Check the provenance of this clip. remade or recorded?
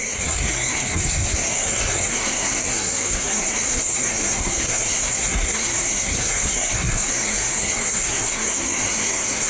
remade